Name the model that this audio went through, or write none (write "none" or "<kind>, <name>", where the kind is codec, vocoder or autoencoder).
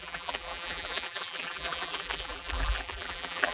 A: vocoder, BigVGAN v2